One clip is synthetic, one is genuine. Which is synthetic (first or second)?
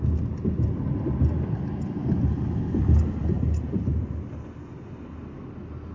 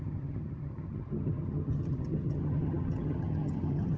second